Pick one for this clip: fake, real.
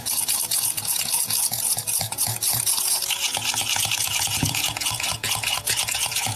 fake